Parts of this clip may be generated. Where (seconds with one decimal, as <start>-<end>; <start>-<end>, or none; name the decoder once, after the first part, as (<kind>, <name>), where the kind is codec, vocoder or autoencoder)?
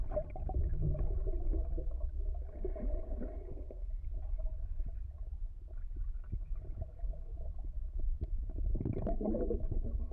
0.0-0.7 (vocoder, BigVGAN v2); 3.9-10.1